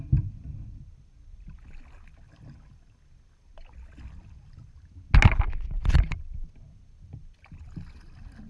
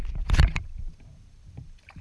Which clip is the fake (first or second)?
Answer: second